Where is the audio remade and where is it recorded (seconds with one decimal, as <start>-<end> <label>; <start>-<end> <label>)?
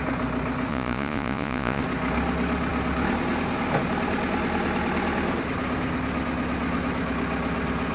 0.0-0.7 recorded; 0.7-1.8 remade; 1.8-7.9 recorded